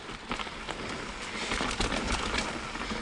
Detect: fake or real real